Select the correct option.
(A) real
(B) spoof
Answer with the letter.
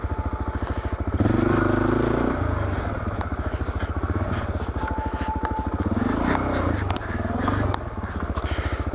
A